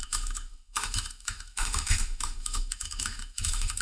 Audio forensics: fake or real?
fake